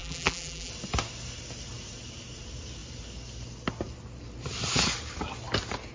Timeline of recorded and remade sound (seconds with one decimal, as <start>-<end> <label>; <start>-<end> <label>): 0.0-0.7 remade; 0.7-5.9 recorded